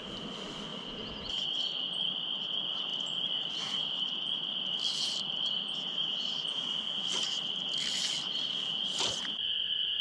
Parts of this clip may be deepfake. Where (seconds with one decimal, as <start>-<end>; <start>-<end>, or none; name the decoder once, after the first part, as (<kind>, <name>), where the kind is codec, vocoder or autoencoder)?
0.7-1.3 (vocoder, BigVGAN v2); 2.9-5.5